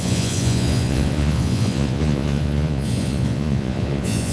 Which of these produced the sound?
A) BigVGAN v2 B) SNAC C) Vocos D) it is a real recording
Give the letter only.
C